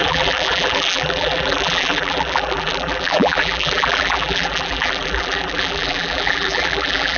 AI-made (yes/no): yes